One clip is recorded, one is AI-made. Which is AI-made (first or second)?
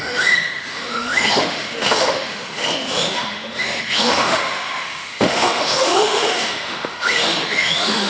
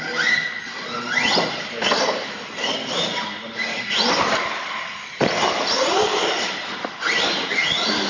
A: first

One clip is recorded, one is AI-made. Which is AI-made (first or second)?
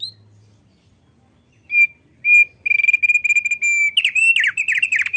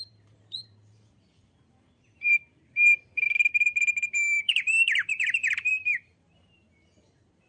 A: second